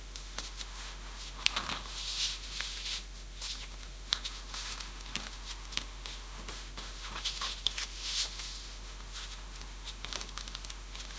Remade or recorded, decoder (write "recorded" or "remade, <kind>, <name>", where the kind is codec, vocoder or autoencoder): remade, autoencoder, DAC-VAE